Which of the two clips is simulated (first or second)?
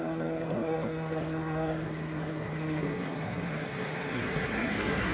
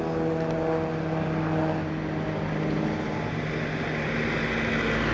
first